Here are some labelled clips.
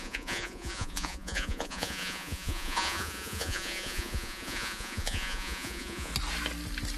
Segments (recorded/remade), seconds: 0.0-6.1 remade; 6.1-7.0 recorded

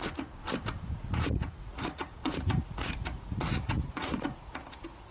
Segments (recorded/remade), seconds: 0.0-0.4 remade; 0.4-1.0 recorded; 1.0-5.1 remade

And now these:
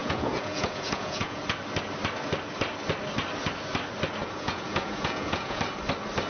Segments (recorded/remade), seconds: 0.0-1.4 remade; 1.4-4.2 recorded; 4.2-5.6 remade; 5.6-6.3 recorded

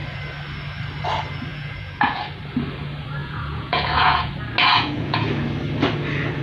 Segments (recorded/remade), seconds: 0.0-1.5 recorded; 1.5-2.2 remade; 2.2-3.2 recorded; 3.2-4.3 remade; 4.3-4.7 recorded; 4.7-5.3 remade; 5.3-6.4 recorded